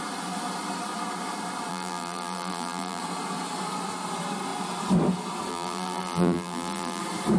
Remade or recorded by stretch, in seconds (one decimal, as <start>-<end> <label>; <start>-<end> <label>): 0.0-1.7 recorded; 1.7-3.0 remade; 3.0-5.5 recorded; 5.5-7.0 remade; 7.0-7.4 recorded